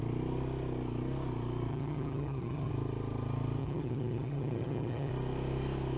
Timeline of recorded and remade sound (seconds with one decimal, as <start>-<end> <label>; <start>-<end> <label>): 0.0-1.7 recorded; 1.7-2.7 remade; 2.7-3.6 recorded; 3.6-5.1 remade; 5.1-6.0 recorded